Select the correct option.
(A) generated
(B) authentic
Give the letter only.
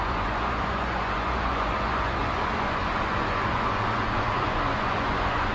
A